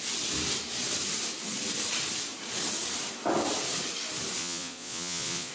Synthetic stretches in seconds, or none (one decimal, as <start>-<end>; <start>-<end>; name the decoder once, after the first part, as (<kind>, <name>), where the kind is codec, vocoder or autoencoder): 4.4-5.5 (vocoder, Vocos)